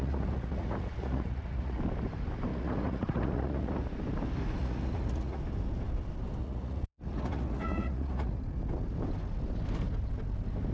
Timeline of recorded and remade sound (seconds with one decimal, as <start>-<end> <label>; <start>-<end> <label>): 0.0-1.8 remade; 1.8-2.5 recorded; 2.5-3.8 remade; 3.8-4.6 recorded; 4.6-5.4 remade; 5.4-6.4 recorded; 6.4-8.4 remade; 8.4-10.7 recorded